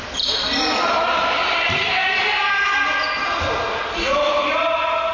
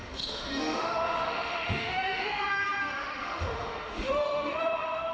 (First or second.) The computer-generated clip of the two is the second